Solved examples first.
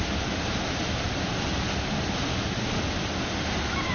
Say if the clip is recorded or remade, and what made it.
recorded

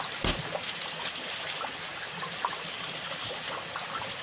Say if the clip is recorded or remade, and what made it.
recorded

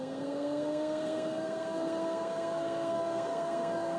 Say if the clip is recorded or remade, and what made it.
remade, codec, SNAC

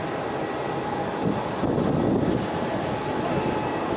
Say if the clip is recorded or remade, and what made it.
recorded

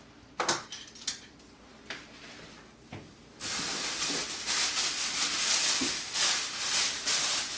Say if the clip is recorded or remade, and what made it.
recorded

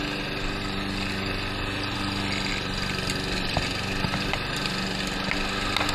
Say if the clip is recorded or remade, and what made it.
recorded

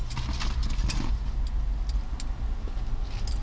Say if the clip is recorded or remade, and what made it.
recorded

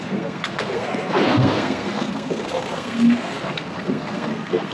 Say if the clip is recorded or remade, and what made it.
remade, codec, SNAC